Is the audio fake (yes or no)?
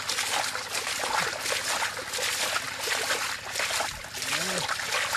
no